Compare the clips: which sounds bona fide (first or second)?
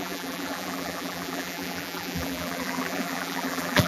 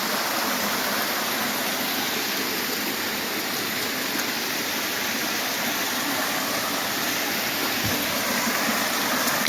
second